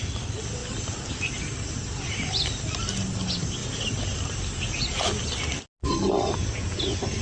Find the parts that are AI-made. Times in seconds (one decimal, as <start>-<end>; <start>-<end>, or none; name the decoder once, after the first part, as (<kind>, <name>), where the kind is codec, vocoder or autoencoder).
none